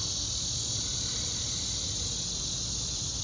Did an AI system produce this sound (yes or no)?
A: no